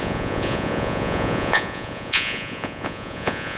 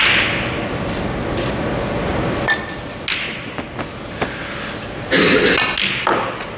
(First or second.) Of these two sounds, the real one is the second